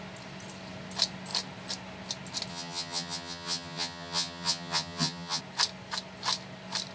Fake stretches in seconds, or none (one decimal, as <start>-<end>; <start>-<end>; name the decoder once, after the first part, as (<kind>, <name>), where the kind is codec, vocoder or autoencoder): 2.5-5.4 (vocoder, HiFi-GAN)